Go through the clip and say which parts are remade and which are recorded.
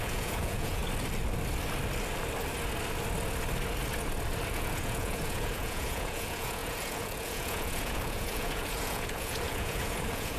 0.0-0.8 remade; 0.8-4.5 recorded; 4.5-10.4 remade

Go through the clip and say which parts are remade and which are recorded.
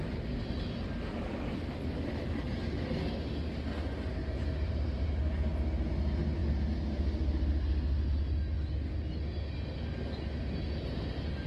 0.0-4.2 recorded; 4.2-5.1 remade; 5.1-11.5 recorded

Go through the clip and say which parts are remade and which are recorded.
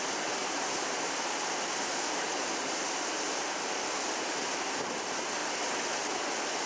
0.0-0.4 recorded; 0.4-4.4 remade; 4.4-6.7 recorded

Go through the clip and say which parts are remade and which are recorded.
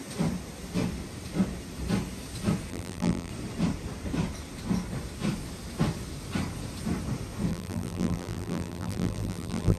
0.0-2.7 recorded; 2.7-3.3 remade; 3.3-7.5 recorded; 7.5-9.8 remade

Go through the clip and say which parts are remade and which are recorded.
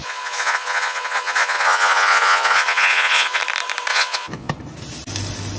0.0-3.4 remade; 3.4-3.9 recorded; 3.9-4.5 remade; 4.5-5.6 recorded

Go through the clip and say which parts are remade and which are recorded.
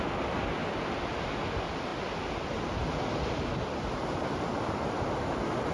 0.0-5.7 recorded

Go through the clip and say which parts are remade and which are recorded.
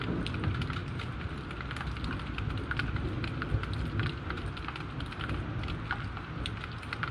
0.0-7.1 recorded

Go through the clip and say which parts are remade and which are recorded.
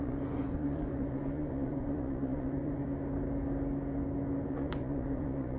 0.0-2.8 remade; 2.8-4.5 recorded; 4.5-5.6 remade